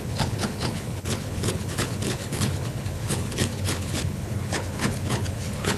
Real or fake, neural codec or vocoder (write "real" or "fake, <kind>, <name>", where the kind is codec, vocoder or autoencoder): fake, codec, HILCodec